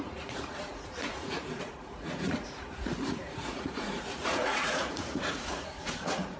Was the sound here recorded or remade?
remade